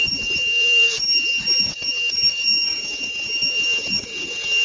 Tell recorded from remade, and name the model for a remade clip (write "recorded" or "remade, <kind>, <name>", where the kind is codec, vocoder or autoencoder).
remade, codec, DAC